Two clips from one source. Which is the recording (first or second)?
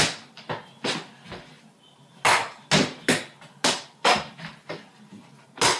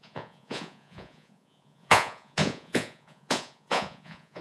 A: first